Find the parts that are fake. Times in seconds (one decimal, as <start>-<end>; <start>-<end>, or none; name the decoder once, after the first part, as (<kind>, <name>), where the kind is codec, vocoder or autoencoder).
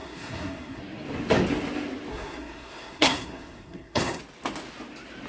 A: 0.0-0.8 (codec, SNAC); 2.1-4.2